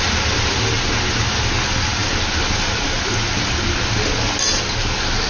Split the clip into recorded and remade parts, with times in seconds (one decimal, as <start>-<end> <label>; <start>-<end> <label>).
0.0-5.3 recorded